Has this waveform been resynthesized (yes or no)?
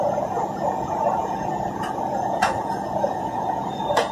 yes